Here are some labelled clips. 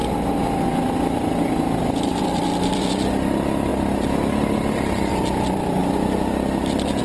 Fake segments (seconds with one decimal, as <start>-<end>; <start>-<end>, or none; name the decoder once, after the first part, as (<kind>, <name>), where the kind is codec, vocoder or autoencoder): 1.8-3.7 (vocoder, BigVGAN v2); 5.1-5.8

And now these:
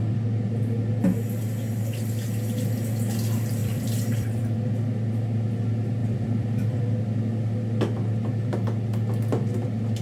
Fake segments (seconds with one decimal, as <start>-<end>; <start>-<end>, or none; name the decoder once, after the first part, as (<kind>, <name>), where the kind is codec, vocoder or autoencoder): 3.6-4.4 (vocoder, BigVGAN v2); 6.0-6.8

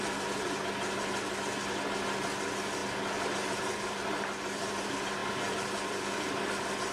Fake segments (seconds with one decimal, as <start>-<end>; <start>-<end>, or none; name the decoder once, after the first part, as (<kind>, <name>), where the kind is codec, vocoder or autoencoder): none